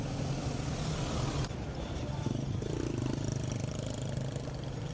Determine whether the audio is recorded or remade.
recorded